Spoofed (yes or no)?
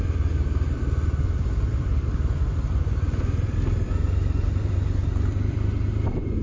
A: yes